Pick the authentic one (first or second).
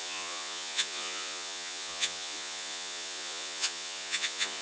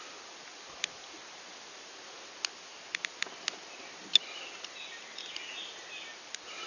second